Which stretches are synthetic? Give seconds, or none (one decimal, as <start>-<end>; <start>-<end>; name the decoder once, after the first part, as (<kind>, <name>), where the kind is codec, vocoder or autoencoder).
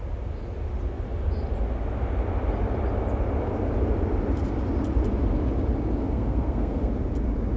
6.0-6.9 (codec, SNAC)